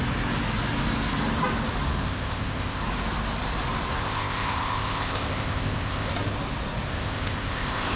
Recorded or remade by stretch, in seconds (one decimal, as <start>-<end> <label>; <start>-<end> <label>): 0.0-2.0 recorded; 2.0-2.8 remade; 2.8-4.0 recorded; 4.0-6.1 remade; 6.1-6.9 recorded; 6.9-8.0 remade